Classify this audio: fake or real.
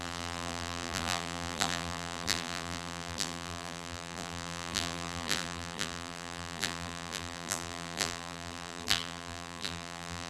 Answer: fake